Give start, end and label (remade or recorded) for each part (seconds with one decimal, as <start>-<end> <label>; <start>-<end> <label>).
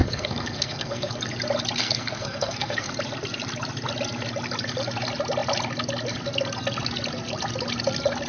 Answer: 0.0-1.2 remade; 1.2-1.8 recorded; 1.8-2.9 remade; 2.9-8.3 recorded